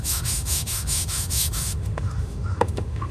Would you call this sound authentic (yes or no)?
no